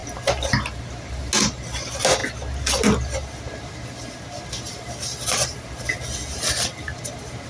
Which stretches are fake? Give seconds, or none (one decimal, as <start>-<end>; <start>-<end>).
none

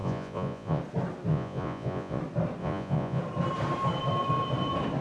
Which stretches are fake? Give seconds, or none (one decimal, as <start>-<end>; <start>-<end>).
0.0-0.8; 1.3-2.2; 2.6-3.2

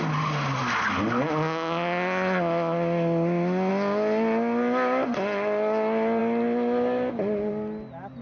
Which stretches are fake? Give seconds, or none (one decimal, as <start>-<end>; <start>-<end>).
none

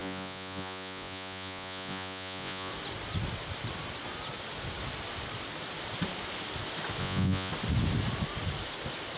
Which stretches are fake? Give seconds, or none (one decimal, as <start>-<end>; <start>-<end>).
0.0-2.7; 7.0-7.5

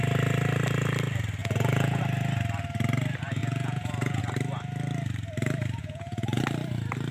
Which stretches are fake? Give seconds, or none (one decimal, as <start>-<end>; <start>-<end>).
1.4-2.0; 3.4-4.2; 5.8-6.4

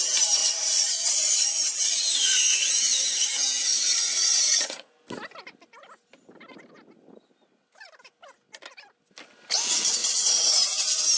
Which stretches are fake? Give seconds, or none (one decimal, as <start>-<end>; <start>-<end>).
0.4-2.7; 3.7-4.9; 10.0-10.5